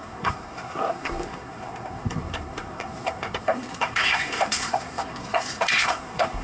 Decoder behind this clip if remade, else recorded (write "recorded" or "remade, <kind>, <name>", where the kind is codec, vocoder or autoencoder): remade, codec, SNAC